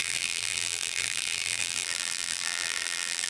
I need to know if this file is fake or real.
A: fake